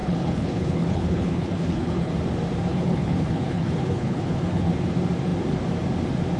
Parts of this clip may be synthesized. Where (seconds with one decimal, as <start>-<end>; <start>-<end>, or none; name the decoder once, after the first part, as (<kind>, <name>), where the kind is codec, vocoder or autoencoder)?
0.0-2.1 (codec, HILCodec); 2.7-4.7